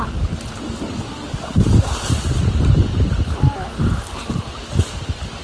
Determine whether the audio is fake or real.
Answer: real